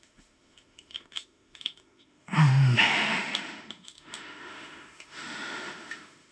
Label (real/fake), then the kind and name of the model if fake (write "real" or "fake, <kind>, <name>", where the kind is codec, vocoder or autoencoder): fake, autoencoder, DAC-VAE